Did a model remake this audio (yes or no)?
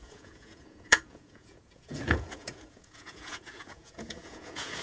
yes